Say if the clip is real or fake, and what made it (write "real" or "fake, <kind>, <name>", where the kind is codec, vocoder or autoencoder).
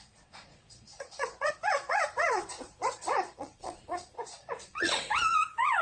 fake, vocoder, Vocos